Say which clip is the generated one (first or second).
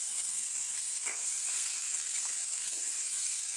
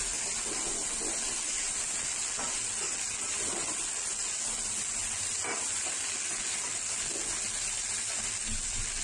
first